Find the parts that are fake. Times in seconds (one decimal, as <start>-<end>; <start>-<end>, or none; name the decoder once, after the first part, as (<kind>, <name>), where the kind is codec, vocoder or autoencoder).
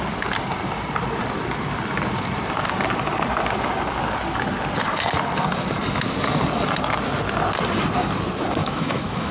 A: 8.6-9.3 (autoencoder, DAC-VAE)